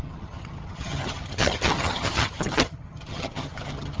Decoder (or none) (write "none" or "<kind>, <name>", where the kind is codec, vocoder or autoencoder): vocoder, HiFi-GAN